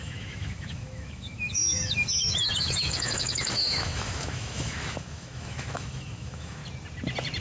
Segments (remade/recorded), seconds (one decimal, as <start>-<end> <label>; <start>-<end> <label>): 0.0-6.6 remade; 6.6-7.4 recorded